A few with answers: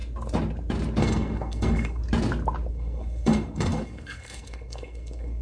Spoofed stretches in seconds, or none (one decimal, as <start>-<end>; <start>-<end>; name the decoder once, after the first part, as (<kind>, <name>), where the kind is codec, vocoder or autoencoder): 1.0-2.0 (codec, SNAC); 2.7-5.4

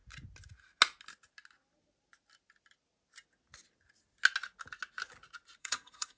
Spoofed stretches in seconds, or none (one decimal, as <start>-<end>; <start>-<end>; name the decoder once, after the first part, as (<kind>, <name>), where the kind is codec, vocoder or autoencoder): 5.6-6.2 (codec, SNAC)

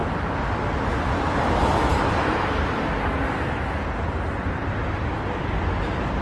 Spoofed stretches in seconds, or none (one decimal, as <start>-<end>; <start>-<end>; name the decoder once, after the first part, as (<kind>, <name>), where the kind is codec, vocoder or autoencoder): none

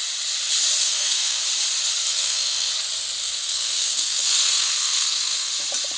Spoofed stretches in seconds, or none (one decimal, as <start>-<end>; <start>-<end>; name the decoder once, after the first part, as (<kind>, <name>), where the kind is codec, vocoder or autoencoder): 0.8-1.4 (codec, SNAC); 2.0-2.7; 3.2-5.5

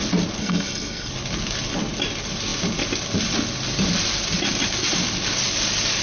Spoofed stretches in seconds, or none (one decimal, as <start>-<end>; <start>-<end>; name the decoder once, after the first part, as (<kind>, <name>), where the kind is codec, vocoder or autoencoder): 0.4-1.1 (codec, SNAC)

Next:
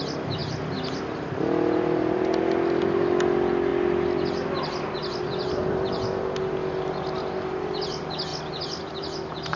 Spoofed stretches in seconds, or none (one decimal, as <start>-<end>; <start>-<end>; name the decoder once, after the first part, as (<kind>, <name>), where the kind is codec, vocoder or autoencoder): none

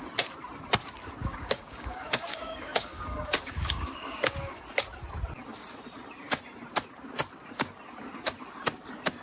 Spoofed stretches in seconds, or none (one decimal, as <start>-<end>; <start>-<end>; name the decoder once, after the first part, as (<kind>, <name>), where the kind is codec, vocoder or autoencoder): 1.2-4.6 (codec, DAC)

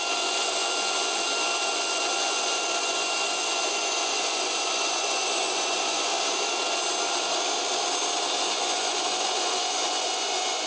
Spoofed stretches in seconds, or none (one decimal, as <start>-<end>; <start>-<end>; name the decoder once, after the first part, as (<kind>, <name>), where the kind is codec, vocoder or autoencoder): 0.0-6.1 (vocoder, Vocos); 8.4-10.7